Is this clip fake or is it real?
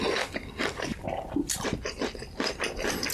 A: real